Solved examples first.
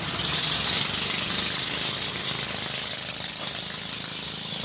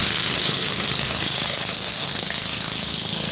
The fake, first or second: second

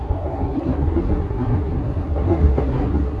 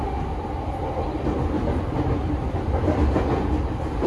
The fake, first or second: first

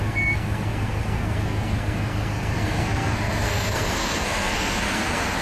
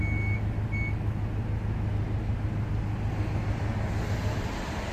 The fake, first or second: first